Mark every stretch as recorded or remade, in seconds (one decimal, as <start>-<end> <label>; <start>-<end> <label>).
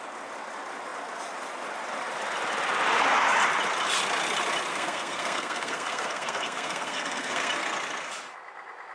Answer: 0.0-4.7 recorded; 4.7-7.5 remade; 7.5-8.9 recorded